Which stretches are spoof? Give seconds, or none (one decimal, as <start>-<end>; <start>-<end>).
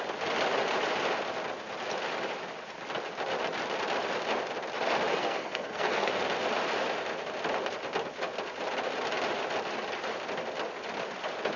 5.1-6.1